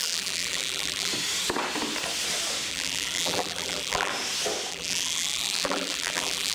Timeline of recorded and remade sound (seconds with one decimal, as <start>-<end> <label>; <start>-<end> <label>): 0.0-1.1 remade; 1.1-2.7 recorded; 2.7-4.1 remade; 4.1-4.7 recorded; 4.7-6.5 remade